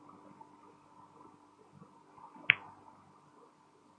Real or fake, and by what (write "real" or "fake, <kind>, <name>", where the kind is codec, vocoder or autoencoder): real